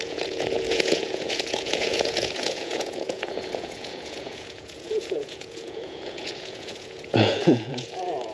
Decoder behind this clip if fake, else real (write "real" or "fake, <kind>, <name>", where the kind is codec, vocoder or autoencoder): fake, vocoder, Vocos